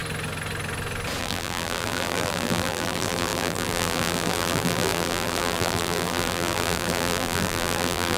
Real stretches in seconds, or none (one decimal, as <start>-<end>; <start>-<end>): 0.0-1.2